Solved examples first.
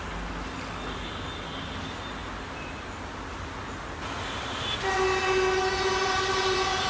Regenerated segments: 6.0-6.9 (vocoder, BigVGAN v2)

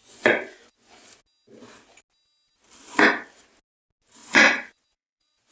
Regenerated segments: 0.0-1.1 (vocoder, Vocos); 4.2-5.5

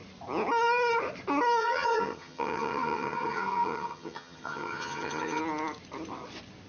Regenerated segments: 1.6-5.4 (vocoder, HiFi-GAN)

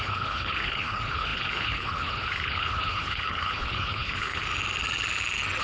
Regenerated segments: 0.0-4.4 (codec, HILCodec)

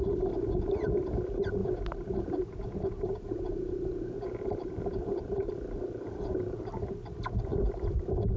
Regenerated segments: 1.6-5.5 (vocoder, BigVGAN v2); 7.5-8.0

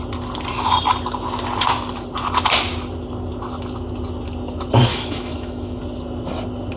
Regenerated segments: 4.9-5.8 (autoencoder, DAC-VAE)

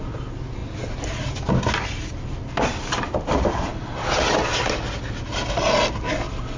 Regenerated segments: none